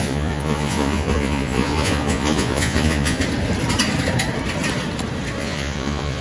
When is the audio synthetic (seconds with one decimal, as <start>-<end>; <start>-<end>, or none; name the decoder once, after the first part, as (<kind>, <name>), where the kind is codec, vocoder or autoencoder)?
0.0-3.2 (vocoder, Vocos); 5.4-6.2